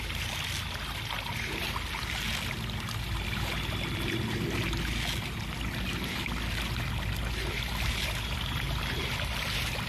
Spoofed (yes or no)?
no